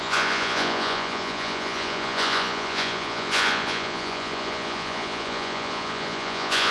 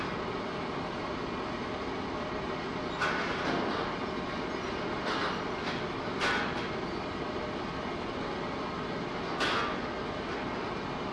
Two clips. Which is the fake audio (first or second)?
first